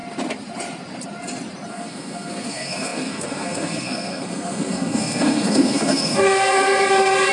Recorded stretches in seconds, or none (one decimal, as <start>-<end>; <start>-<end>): 0.0-1.7